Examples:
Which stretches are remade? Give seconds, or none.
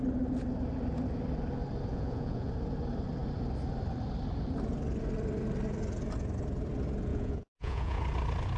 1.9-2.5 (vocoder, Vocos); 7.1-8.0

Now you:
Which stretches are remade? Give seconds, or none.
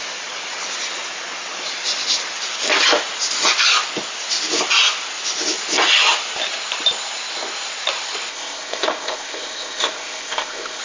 8.3-10.8 (codec, ZipCodec)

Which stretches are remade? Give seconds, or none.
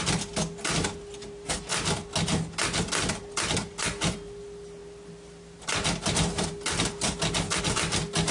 none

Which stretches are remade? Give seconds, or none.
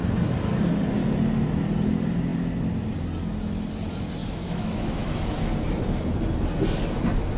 4.2-5.1 (autoencoder, DAC-VAE)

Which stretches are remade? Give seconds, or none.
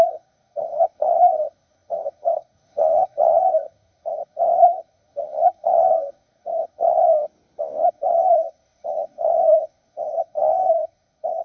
0.0-7.0 (codec, SNAC); 7.9-11.4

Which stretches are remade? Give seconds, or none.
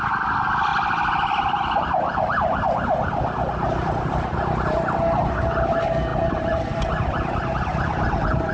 0.7-5.4 (vocoder, BigVGAN v2); 6.1-7.5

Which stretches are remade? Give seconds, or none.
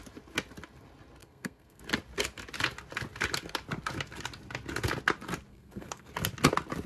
1.2-1.8 (codec, SNAC); 5.5-6.1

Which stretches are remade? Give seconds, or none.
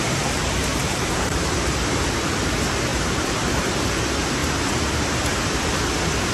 0.7-2.1 (vocoder, BigVGAN v2); 2.9-4.0; 4.4-5.7